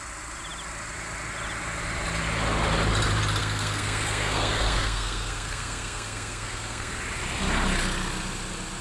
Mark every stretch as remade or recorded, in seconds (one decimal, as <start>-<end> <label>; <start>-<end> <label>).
0.0-3.4 recorded; 3.4-7.0 remade; 7.0-8.8 recorded